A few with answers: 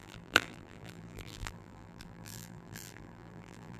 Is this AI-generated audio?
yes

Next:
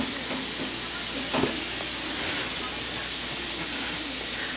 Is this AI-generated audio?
no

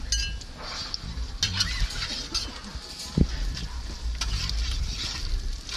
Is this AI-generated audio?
no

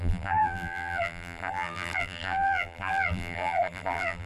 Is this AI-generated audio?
yes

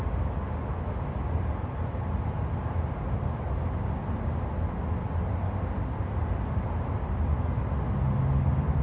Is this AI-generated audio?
no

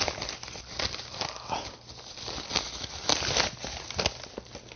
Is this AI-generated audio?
no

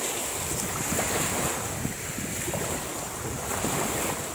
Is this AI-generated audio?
no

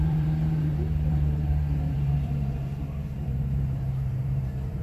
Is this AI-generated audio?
yes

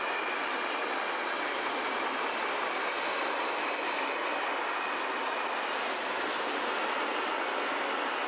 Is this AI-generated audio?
no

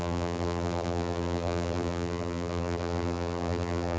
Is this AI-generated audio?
yes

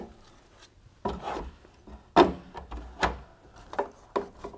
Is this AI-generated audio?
no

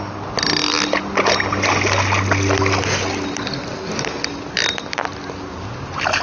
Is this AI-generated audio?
no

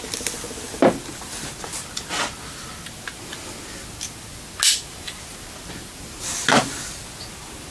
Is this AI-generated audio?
no